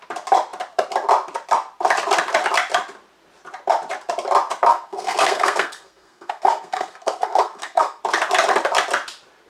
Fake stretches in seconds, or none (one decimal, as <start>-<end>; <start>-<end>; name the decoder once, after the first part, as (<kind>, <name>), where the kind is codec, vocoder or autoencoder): 4.7-8.0 (codec, SNAC)